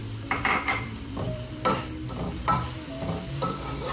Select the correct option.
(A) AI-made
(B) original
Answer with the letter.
A